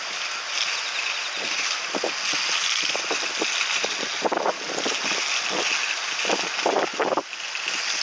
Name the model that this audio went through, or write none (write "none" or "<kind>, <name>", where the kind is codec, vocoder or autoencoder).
none